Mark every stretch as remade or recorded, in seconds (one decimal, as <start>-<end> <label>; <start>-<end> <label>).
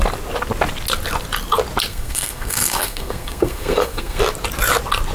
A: 0.0-1.9 recorded; 1.9-4.2 remade; 4.2-5.1 recorded